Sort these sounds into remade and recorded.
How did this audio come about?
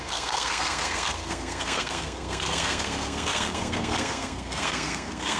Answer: remade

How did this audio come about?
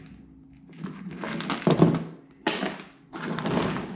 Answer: recorded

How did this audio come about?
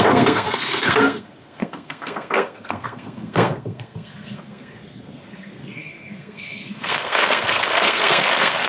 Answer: remade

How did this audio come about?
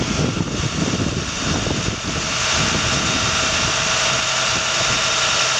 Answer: recorded